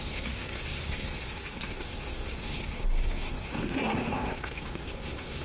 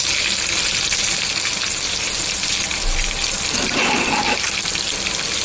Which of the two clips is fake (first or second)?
first